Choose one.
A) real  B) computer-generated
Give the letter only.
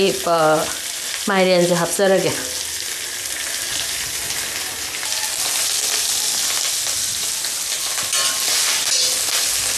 A